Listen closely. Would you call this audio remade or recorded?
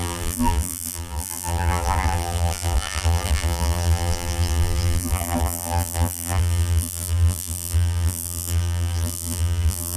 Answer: remade